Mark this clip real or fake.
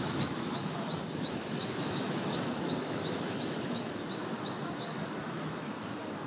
fake